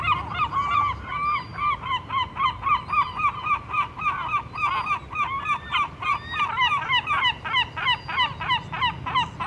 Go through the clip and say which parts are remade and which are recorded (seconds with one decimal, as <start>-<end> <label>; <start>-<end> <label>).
0.0-9.5 recorded